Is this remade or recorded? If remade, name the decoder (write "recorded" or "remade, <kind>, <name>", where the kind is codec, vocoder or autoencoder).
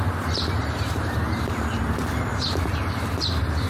remade, vocoder, BigVGAN v2